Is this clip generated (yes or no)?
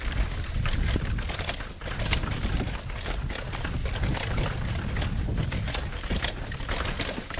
no